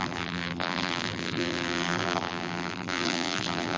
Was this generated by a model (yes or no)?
yes